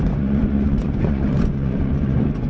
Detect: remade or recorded remade